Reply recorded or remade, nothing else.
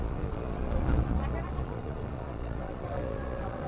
remade